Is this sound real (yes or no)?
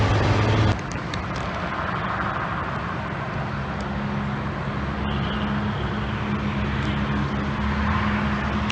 yes